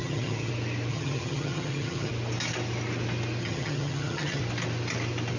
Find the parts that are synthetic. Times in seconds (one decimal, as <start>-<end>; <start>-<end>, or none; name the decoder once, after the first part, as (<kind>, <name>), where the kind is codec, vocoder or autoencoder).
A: 0.0-0.5 (vocoder, HiFi-GAN); 0.9-2.1; 3.4-4.4